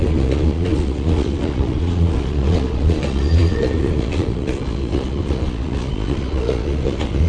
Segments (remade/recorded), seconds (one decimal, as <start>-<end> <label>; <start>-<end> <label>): 0.0-7.3 remade